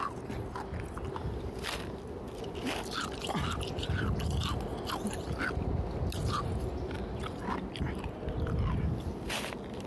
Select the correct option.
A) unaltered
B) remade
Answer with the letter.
A